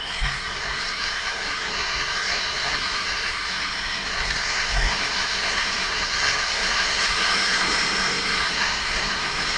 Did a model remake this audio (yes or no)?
yes